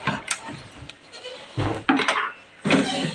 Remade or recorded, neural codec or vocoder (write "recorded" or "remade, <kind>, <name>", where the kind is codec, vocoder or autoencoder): recorded